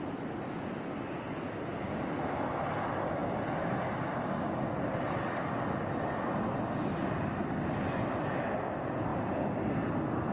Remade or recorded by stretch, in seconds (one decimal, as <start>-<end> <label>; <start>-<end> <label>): 0.0-10.3 recorded